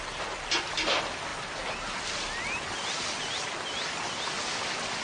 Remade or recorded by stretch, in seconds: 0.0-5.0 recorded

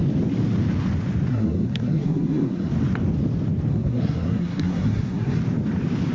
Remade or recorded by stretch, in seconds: 0.0-1.3 recorded; 1.3-2.7 remade; 2.7-3.7 recorded; 3.7-5.4 remade; 5.4-6.1 recorded

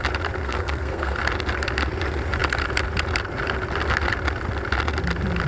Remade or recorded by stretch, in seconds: 0.0-0.4 recorded; 0.4-1.2 remade; 1.2-5.5 recorded